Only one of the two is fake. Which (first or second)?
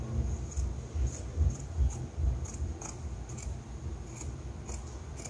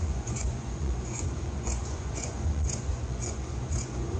second